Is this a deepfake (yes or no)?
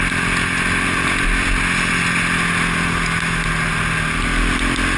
no